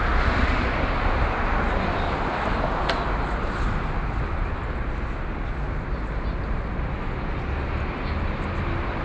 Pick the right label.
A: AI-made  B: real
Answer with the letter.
B